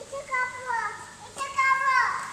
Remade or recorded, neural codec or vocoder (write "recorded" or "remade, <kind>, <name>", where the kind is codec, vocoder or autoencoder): recorded